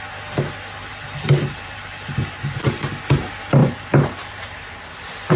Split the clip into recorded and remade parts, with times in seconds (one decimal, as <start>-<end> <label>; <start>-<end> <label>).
0.0-0.9 recorded; 0.9-2.7 remade; 2.7-3.6 recorded; 3.6-4.5 remade; 4.5-5.4 recorded